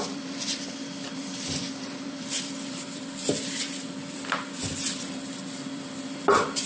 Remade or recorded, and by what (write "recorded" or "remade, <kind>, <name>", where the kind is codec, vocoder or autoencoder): remade, vocoder, BigVGAN v2